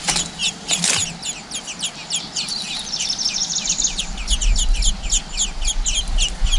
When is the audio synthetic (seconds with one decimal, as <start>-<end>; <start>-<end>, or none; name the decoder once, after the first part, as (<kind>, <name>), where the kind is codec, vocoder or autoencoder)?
none